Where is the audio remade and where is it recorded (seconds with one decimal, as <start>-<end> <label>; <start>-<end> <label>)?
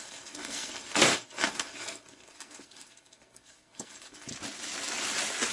0.0-4.3 remade; 4.3-5.5 recorded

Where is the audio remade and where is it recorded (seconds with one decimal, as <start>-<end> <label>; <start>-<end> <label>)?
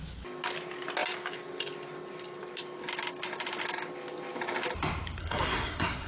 0.0-5.2 recorded; 5.2-6.1 remade